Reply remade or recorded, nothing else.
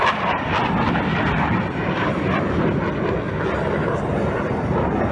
recorded